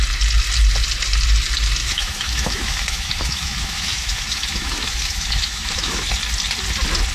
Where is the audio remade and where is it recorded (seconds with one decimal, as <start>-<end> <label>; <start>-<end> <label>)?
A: 0.0-1.8 recorded; 1.8-6.1 remade; 6.1-7.1 recorded